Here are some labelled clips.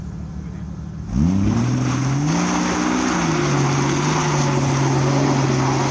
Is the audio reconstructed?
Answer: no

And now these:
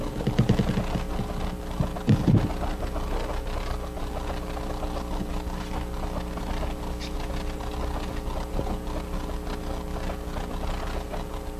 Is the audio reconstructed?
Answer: no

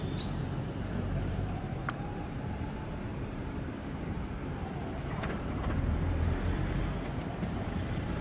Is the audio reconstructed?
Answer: yes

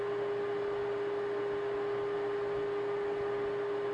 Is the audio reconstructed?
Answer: no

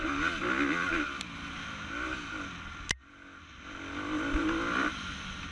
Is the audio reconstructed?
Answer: no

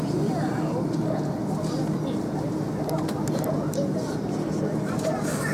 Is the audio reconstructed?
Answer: no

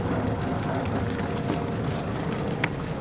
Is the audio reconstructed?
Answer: no